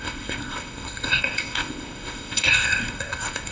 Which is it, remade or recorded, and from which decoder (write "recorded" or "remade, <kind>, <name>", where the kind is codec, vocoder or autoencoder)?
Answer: remade, codec, ZipCodec